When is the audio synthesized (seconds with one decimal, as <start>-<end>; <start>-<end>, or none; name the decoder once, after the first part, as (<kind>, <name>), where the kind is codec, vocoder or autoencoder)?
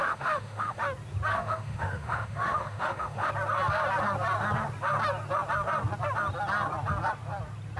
0.0-0.8 (autoencoder, DAC-VAE); 1.3-3.3